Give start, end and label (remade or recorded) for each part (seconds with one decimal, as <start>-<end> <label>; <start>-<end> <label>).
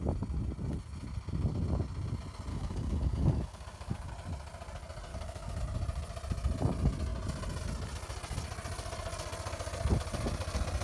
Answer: 0.0-2.5 recorded; 2.5-4.1 remade; 4.1-5.1 recorded; 5.1-5.6 remade; 5.6-10.8 recorded